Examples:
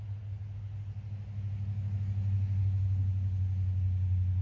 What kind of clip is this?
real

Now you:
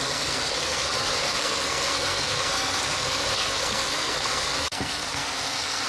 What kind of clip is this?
fake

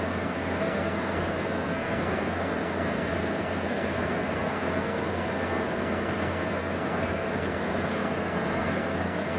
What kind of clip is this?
fake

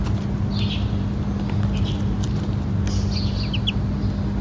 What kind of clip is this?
real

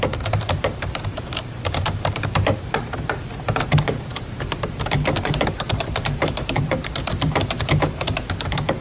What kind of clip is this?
fake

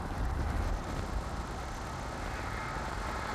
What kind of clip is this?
real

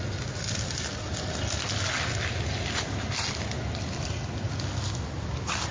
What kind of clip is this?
real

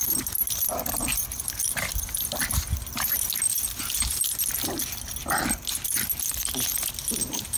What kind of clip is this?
real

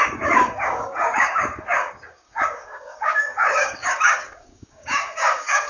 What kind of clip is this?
fake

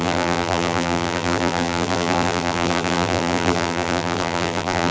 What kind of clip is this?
fake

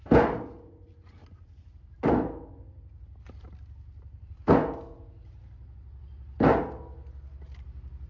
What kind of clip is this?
real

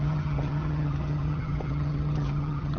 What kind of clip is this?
fake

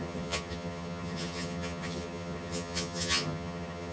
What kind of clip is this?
fake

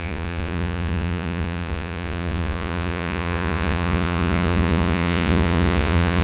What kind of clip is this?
fake